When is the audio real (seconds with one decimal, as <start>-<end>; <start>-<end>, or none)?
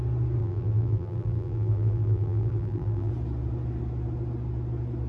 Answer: 0.0-0.4; 3.1-5.1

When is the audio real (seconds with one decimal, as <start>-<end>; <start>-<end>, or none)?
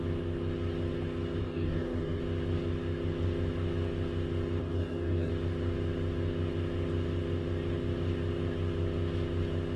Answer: 0.0-1.4; 2.2-4.6; 5.3-9.8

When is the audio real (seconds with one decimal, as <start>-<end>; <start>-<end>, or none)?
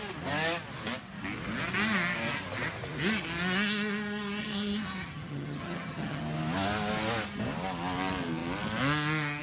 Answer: 0.0-4.4; 6.2-9.4